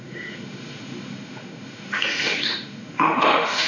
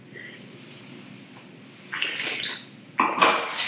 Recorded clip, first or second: second